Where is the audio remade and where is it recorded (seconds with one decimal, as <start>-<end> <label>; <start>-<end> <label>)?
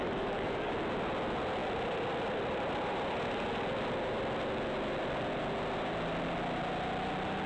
0.0-0.7 remade; 0.7-7.5 recorded